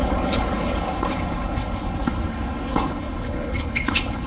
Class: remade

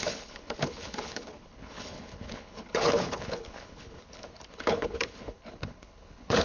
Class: remade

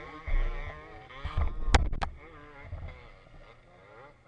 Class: recorded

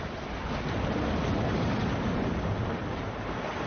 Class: recorded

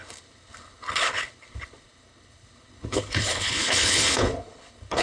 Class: remade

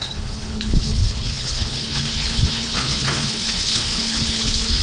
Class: remade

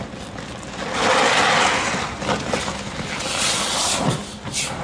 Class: recorded